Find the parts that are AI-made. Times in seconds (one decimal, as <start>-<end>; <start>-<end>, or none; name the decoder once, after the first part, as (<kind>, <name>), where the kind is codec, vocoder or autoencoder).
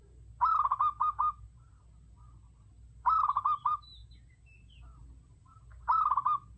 none